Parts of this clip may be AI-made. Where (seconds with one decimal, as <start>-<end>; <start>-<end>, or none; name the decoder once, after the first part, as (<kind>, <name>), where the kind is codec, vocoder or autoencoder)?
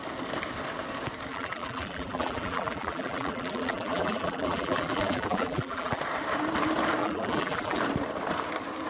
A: 1.3-6.0 (vocoder, BigVGAN v2); 7.0-7.8